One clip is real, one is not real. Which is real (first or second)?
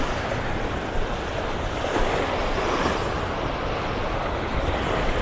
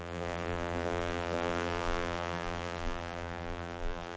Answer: first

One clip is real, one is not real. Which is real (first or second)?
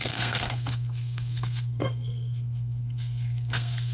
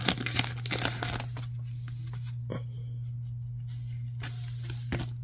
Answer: second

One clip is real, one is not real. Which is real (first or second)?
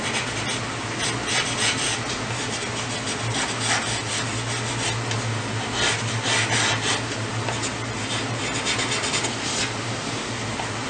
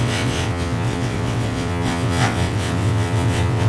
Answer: first